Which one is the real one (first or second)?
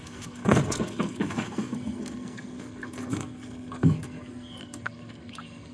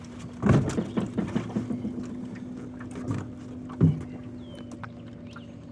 second